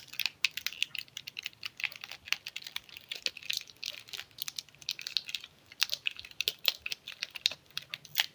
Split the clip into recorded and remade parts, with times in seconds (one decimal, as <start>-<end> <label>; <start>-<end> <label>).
0.0-8.3 recorded